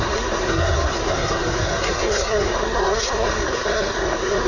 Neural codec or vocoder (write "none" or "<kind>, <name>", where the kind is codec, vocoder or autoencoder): codec, SNAC